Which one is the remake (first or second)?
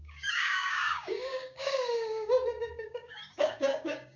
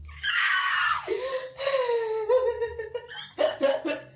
first